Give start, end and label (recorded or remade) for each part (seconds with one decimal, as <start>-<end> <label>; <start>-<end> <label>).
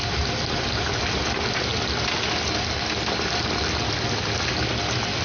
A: 0.0-5.2 recorded